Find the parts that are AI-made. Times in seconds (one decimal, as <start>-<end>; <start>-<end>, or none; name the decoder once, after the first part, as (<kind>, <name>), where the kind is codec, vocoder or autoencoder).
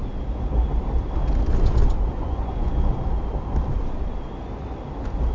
2.1-2.7 (vocoder, Vocos)